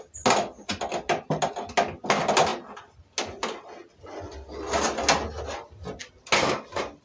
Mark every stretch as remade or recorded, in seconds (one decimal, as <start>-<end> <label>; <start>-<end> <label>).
0.0-7.0 recorded